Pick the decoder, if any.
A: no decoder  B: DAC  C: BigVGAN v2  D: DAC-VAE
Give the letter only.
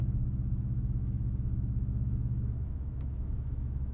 D